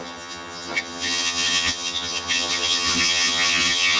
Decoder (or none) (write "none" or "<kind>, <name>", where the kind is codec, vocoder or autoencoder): vocoder, HiFi-GAN